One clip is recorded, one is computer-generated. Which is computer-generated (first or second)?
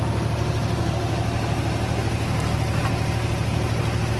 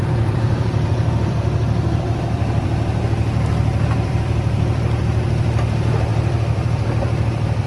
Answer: second